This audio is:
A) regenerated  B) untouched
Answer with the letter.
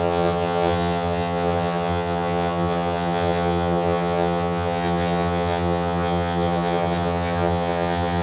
A